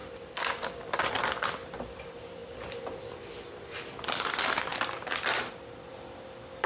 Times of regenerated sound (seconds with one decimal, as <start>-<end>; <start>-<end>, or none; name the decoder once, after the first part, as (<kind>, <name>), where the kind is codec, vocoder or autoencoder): 0.0-4.7 (vocoder, BigVGAN v2); 5.9-6.7